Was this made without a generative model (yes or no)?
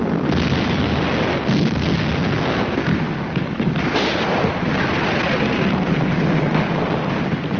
yes